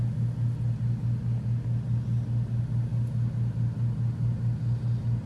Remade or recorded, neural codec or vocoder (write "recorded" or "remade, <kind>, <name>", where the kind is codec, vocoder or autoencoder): recorded